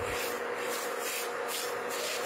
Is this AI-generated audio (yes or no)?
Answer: no